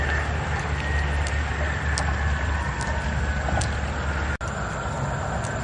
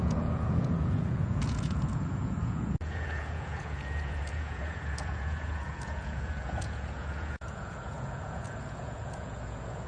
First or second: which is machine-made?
second